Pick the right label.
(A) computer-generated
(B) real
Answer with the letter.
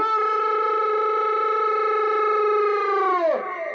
B